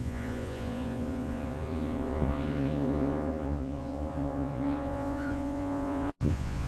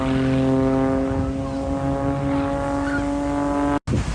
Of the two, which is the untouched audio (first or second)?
second